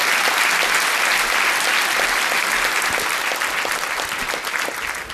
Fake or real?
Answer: real